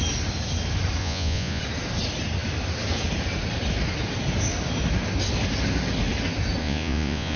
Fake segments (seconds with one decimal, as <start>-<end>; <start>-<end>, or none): 1.0-1.6; 6.6-7.4